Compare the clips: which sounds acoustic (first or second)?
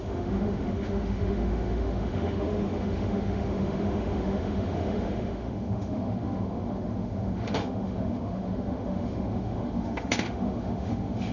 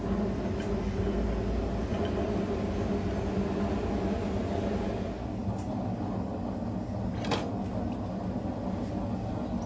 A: second